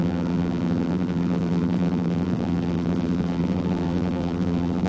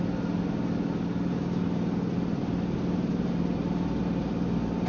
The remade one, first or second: first